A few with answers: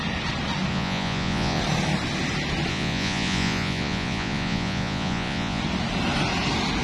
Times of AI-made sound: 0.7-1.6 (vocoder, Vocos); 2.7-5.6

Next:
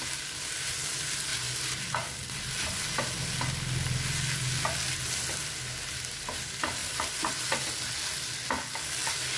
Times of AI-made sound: 6.8-7.3 (vocoder, BigVGAN v2)

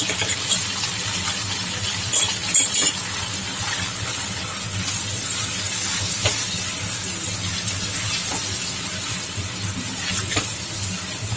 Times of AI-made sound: none

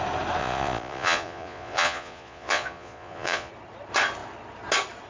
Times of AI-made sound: 0.4-3.5 (vocoder, Vocos)

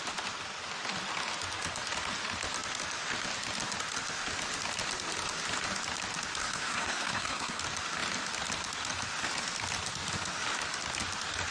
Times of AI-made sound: 6.4-7.6 (codec, SNAC)

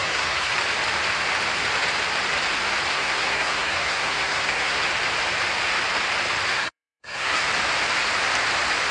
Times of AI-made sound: 0.0-0.5 (codec, SNAC); 2.9-4.9; 6.5-7.5

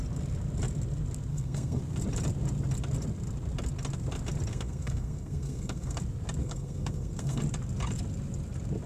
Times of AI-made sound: 1.3-1.8 (codec, SNAC); 4.5-6.0; 6.4-7.4

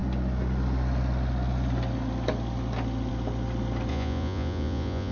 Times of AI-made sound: 3.9-5.1 (vocoder, Vocos)